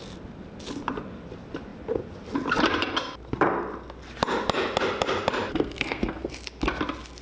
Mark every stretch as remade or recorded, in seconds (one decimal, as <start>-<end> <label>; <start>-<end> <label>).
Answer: 0.0-5.5 recorded; 5.5-6.3 remade; 6.3-7.2 recorded